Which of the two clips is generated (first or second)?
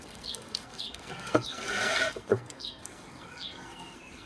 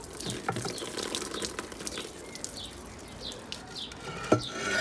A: first